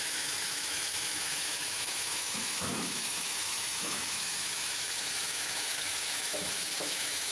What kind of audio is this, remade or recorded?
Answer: remade